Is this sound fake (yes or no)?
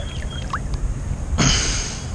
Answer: no